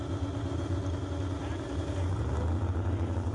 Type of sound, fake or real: real